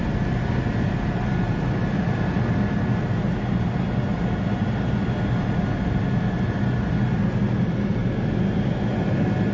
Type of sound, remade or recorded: recorded